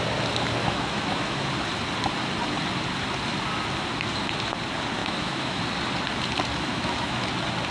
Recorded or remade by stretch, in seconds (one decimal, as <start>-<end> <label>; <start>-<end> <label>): 0.0-0.6 recorded; 0.6-1.5 remade; 1.5-5.0 recorded; 5.0-5.6 remade; 5.6-6.7 recorded; 6.7-7.2 remade; 7.2-7.7 recorded